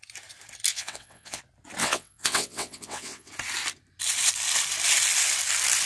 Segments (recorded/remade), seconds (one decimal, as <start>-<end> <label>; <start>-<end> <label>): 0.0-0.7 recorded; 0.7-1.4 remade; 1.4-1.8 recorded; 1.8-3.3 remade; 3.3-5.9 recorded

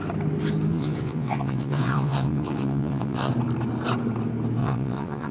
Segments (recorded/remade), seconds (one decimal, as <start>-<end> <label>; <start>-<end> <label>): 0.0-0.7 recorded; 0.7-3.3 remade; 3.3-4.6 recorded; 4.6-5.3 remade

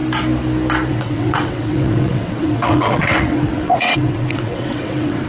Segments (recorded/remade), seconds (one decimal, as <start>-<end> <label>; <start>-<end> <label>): 0.0-0.9 recorded; 0.9-5.3 remade